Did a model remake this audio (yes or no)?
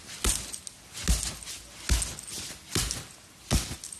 no